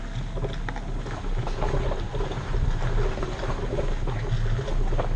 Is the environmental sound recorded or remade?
recorded